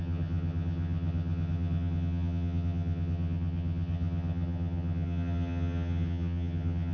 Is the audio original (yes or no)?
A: no